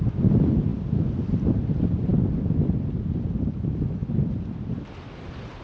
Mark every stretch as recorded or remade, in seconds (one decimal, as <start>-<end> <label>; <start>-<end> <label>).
0.0-4.0 remade; 4.0-4.6 recorded; 4.6-5.6 remade